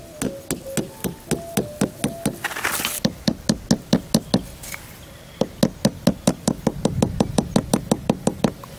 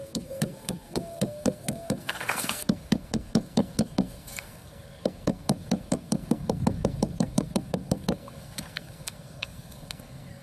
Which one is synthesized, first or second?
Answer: second